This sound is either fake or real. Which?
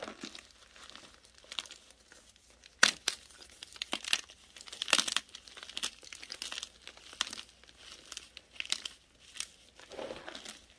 real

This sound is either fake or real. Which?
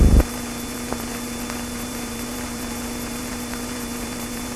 fake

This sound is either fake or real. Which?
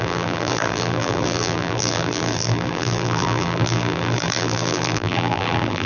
fake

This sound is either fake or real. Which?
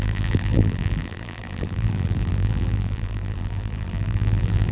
fake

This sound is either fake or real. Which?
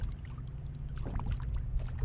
real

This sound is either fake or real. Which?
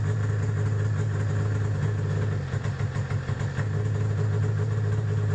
real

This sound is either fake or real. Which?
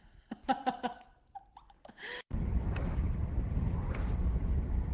fake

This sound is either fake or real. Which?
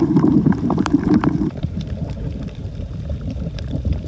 fake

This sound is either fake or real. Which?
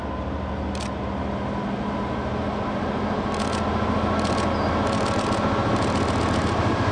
real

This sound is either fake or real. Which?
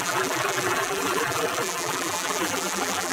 fake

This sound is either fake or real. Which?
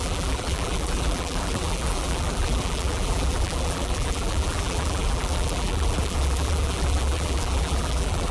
fake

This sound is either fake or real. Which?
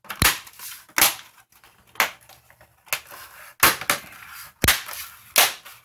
real